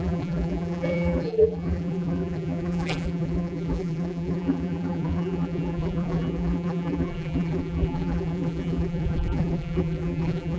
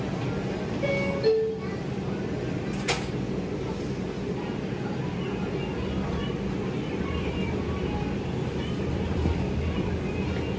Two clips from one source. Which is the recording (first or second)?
second